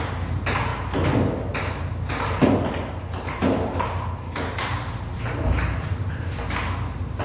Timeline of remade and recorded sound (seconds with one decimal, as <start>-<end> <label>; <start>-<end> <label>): 0.0-7.2 recorded

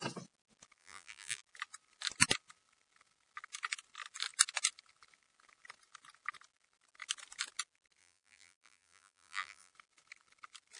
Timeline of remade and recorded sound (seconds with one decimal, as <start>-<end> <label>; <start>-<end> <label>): 0.0-0.8 recorded; 0.8-1.4 remade; 1.4-8.0 recorded; 8.0-9.7 remade; 9.7-10.8 recorded

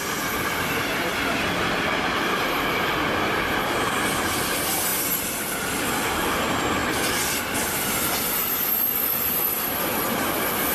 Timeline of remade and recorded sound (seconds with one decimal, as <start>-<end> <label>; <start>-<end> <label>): 0.0-10.7 recorded

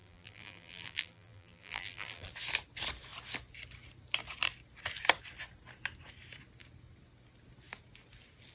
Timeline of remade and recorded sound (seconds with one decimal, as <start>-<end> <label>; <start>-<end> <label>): 0.0-2.3 remade; 2.3-8.5 recorded